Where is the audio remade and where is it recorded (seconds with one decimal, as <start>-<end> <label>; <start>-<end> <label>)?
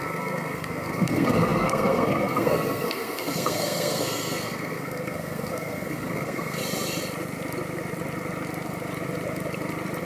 0.0-6.6 remade; 6.6-10.0 recorded